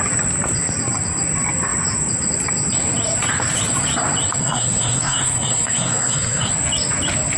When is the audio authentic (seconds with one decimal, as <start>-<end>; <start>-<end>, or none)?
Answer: 0.0-4.4; 6.5-7.4